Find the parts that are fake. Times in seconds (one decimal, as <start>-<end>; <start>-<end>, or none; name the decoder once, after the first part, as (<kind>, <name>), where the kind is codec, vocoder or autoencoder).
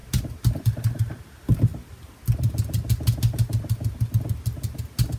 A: 0.0-1.2 (vocoder, BigVGAN v2)